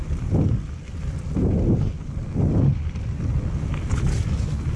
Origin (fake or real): real